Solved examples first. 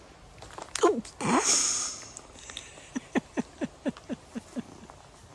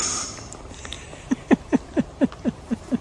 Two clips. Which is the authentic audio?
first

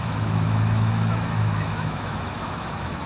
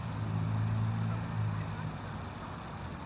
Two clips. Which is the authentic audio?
second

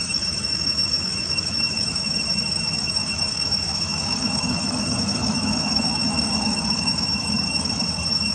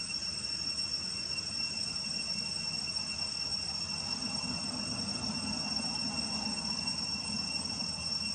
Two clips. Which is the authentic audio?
second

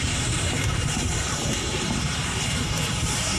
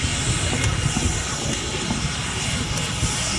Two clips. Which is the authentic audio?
second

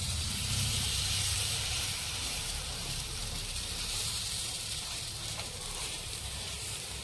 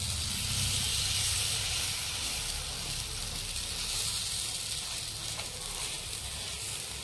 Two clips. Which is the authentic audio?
second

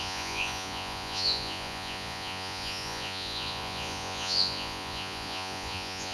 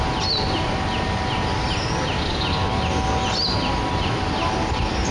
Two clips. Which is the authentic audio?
second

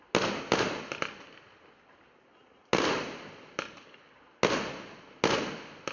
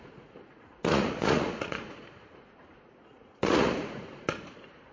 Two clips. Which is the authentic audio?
first